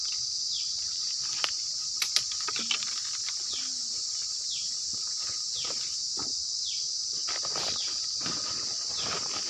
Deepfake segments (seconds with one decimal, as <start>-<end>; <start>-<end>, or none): 4.9-5.7